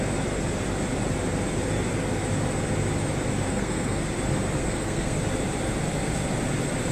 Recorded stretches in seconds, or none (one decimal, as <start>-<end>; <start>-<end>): 0.0-3.5; 4.0-4.6; 5.2-6.9